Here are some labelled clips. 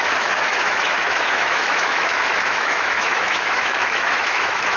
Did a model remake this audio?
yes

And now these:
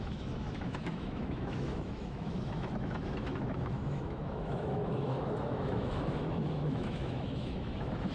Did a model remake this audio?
yes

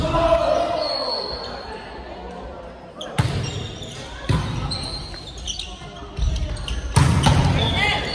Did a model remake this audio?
no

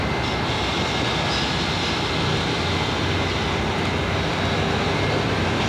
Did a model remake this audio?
no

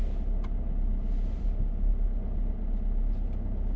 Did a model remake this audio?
no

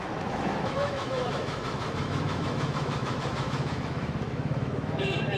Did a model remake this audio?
yes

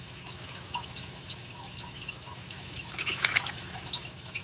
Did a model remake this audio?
yes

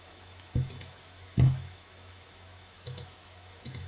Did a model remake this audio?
yes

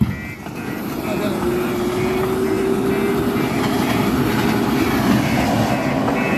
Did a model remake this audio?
no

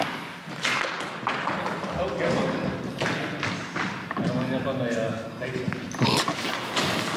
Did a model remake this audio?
no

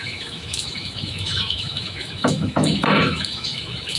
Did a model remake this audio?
yes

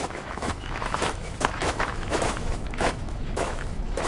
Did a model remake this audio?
yes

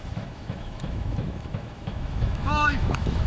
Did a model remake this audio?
yes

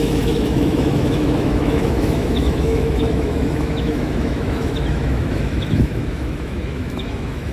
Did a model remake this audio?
yes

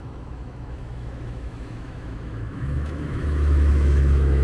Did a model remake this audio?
yes